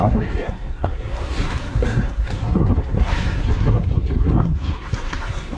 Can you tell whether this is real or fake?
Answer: fake